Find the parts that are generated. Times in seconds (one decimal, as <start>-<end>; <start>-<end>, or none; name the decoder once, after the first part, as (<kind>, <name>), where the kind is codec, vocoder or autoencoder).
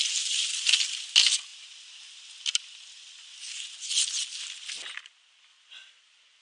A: none